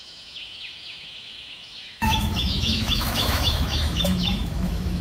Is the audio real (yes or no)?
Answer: no